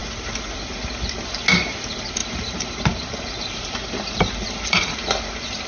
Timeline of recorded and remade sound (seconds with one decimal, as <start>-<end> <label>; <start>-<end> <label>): 0.0-2.2 recorded; 2.2-4.9 remade; 4.9-5.7 recorded